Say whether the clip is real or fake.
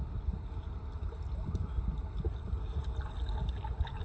real